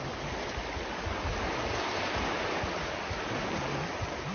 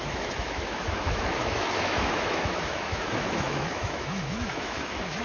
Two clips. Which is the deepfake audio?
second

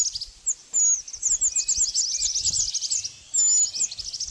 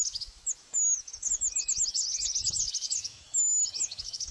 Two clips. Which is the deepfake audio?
second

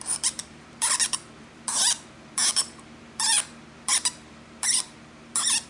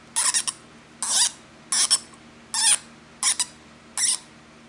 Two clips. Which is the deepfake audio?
first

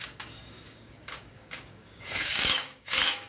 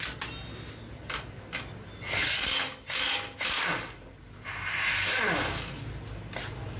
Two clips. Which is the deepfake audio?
first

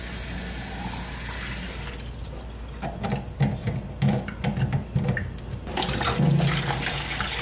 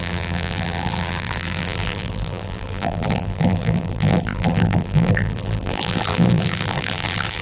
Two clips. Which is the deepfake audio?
second